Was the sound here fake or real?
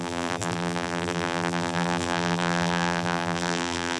fake